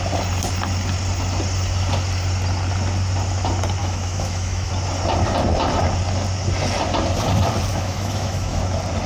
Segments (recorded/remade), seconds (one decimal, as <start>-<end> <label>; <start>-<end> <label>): 0.0-3.8 recorded; 3.8-4.7 remade; 4.7-7.7 recorded; 7.7-8.6 remade; 8.6-9.1 recorded